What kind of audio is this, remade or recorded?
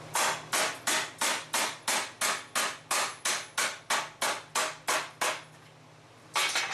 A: recorded